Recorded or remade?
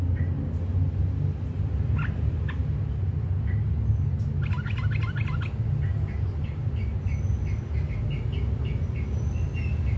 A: recorded